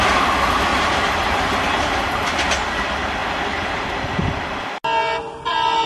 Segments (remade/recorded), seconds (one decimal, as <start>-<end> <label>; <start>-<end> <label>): 0.0-5.9 recorded